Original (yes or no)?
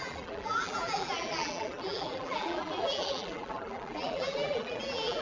no